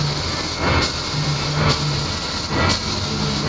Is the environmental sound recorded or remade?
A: recorded